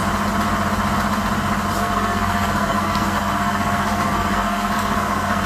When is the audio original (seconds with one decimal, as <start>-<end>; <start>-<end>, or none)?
0.0-1.7